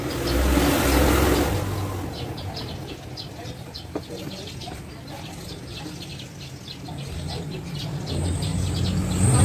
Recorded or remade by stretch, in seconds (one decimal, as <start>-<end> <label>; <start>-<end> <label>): 0.0-9.4 recorded